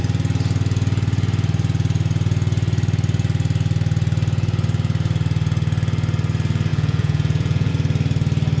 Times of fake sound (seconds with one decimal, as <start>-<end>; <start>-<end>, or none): 6.7-7.7